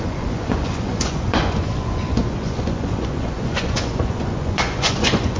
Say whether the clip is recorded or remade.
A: remade